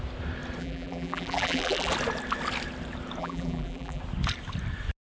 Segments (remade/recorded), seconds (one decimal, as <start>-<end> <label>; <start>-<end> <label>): 0.0-0.6 recorded; 0.6-1.9 remade; 1.9-3.2 recorded; 3.2-4.0 remade; 4.0-5.1 recorded